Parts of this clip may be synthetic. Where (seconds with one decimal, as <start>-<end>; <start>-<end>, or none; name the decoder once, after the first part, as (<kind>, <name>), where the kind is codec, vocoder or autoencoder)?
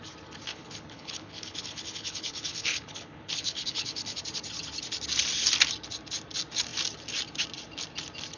0.5-4.2 (codec, HILCodec)